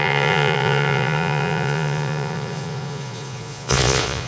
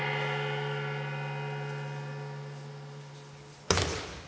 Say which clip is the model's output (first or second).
first